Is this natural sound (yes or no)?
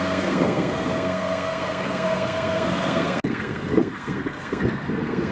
no